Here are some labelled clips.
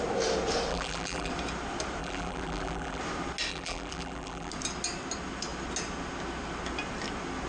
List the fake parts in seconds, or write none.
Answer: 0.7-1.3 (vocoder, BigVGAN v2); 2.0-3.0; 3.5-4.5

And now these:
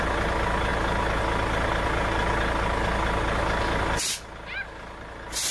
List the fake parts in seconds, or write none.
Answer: none

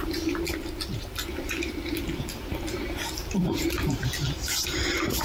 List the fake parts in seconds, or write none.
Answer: 0.9-2.0 (vocoder, BigVGAN v2); 3.2-3.8

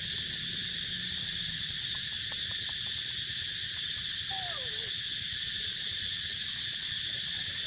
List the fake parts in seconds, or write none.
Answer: 5.1-7.7 (vocoder, BigVGAN v2)

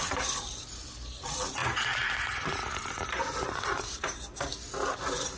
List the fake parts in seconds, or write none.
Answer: 0.0-4.5 (vocoder, BigVGAN v2)

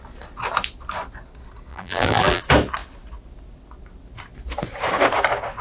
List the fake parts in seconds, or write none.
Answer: 1.7-2.4 (vocoder, BigVGAN v2)